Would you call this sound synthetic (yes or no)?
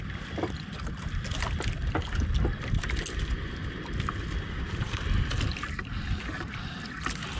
no